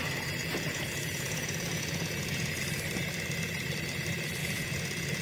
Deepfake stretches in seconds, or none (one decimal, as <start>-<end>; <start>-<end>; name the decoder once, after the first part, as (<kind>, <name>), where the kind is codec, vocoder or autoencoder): 0.4-2.6 (vocoder, Vocos); 4.4-5.2